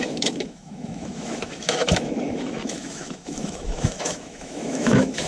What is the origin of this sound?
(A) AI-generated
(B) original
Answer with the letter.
A